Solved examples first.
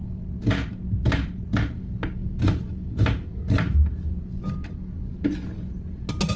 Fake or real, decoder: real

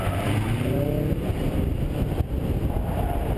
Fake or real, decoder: real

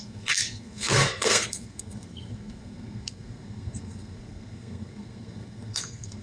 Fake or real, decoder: fake, codec, SNAC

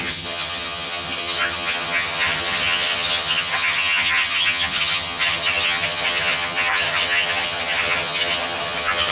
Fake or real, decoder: fake, vocoder, HiFi-GAN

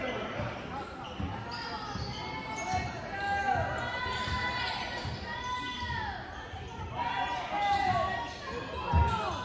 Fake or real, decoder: real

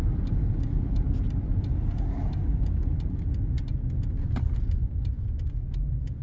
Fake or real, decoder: real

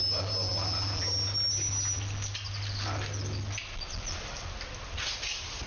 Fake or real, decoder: real